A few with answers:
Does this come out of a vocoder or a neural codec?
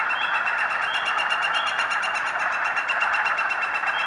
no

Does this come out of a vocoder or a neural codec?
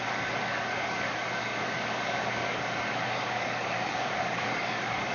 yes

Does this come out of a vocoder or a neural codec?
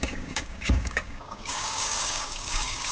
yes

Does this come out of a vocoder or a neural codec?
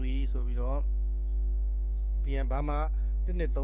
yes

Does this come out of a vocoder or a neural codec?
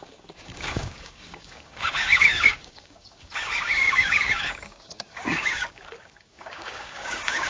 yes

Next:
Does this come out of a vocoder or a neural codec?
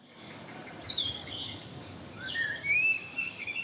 yes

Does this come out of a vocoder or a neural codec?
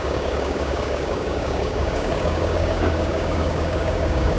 yes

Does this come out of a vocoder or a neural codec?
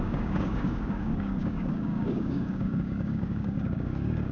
yes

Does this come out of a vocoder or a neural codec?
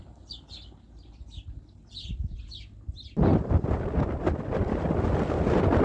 no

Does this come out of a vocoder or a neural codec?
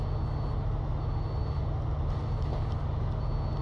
no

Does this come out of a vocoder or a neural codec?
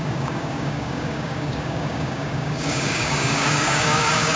yes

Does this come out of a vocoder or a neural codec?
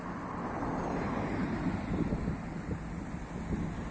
no